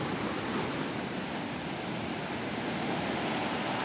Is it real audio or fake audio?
real